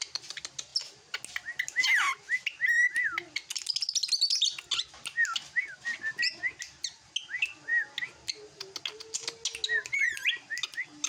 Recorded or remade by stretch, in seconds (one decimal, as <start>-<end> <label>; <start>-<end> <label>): 0.0-11.1 recorded